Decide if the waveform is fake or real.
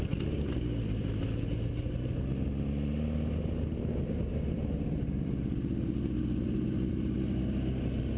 real